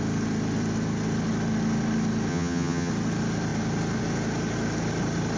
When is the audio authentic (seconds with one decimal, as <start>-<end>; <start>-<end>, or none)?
0.0-2.3; 2.9-5.4